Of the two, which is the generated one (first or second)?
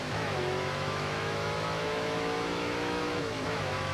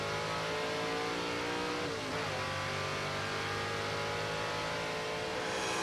first